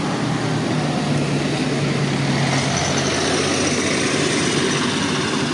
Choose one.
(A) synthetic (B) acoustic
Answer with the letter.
B